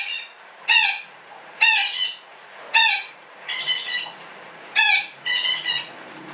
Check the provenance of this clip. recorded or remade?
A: remade